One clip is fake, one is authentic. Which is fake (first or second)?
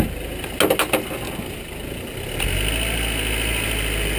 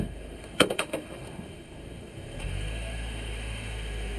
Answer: second